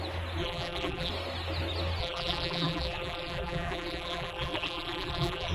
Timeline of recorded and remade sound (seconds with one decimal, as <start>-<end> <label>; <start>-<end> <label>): 0.0-0.4 recorded; 0.4-1.1 remade; 1.1-2.0 recorded; 2.0-5.5 remade